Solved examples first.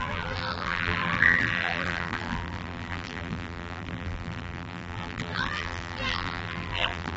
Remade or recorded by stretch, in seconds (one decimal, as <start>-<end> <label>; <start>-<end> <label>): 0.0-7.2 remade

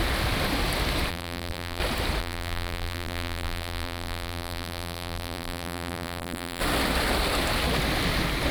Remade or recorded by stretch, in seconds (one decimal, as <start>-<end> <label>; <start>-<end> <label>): 0.0-1.1 recorded; 1.1-1.8 remade; 1.8-2.2 recorded; 2.2-6.6 remade; 6.6-8.5 recorded

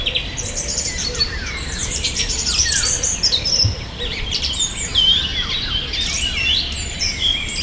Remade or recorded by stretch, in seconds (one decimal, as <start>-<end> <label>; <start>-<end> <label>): 0.0-5.3 remade; 5.3-6.9 recorded; 6.9-7.6 remade

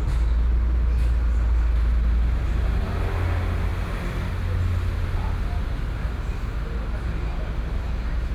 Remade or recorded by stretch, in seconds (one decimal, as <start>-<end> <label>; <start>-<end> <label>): 0.0-8.3 recorded